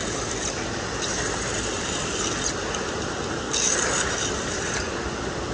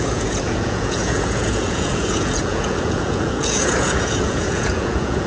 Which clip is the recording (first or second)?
first